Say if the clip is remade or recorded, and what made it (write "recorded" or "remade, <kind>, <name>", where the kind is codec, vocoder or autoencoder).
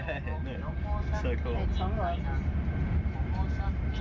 recorded